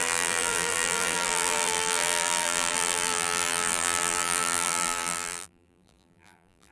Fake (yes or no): yes